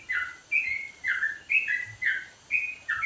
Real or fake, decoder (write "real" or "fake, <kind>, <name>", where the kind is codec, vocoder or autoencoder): real